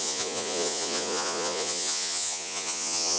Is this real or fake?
fake